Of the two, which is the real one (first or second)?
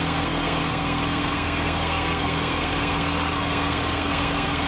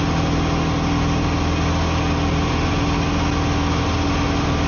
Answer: second